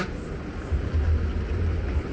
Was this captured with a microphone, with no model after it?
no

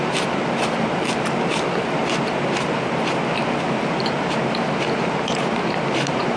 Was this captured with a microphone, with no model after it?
no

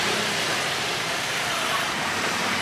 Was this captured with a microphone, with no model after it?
no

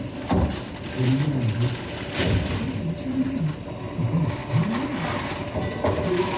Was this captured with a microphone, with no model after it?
yes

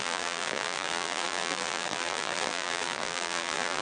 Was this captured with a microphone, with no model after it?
no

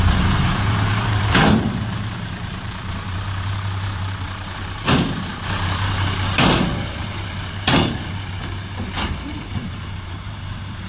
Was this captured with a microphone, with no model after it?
no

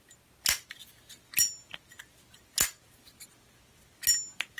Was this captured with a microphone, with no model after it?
yes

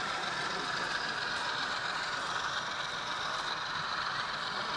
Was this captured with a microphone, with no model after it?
no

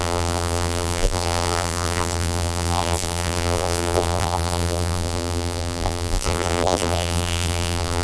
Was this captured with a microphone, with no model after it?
no